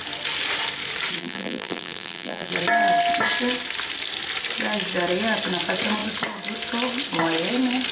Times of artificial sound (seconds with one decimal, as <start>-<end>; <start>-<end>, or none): 1.2-2.5